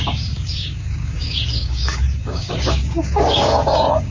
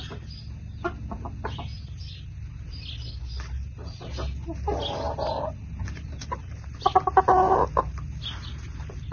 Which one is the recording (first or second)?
second